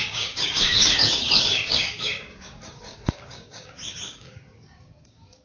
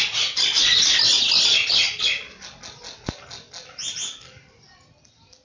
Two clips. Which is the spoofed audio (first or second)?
first